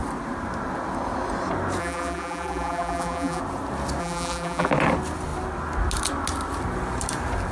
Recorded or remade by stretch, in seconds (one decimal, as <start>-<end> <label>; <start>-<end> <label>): 0.0-1.8 recorded; 1.8-3.4 remade; 3.4-4.0 recorded; 4.0-4.7 remade; 4.7-7.5 recorded